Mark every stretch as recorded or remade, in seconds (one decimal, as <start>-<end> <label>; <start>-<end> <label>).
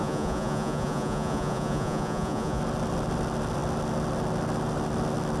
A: 0.0-2.6 remade; 2.6-5.4 recorded